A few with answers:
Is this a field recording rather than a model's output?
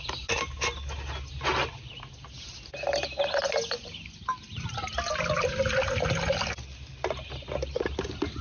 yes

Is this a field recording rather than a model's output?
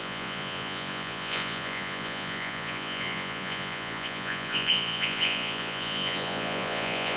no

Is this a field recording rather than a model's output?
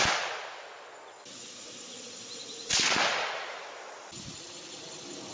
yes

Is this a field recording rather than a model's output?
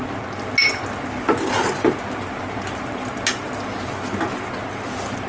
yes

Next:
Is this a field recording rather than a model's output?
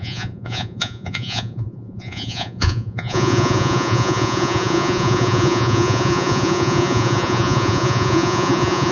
no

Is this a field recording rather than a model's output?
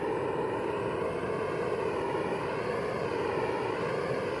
yes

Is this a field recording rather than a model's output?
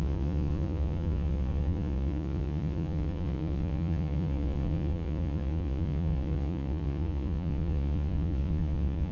no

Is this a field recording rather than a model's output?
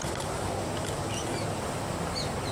yes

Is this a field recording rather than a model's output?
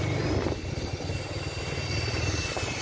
yes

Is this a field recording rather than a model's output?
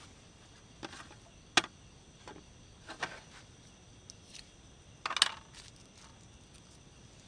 yes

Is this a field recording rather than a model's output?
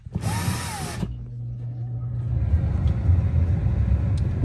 yes